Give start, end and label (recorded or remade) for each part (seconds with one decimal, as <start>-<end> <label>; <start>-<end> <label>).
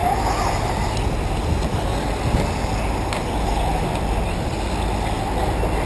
0.0-5.9 recorded